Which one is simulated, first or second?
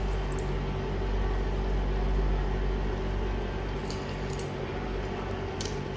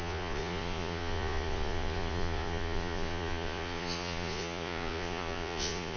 second